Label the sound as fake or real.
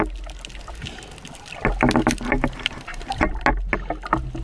real